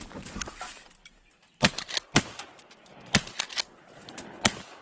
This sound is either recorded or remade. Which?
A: recorded